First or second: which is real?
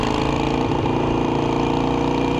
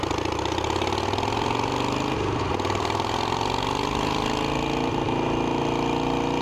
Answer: second